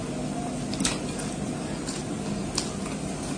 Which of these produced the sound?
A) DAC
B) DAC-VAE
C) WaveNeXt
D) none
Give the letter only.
D